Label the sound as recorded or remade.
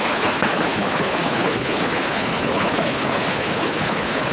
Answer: remade